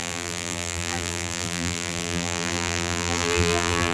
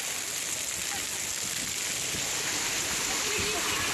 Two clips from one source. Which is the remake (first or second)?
first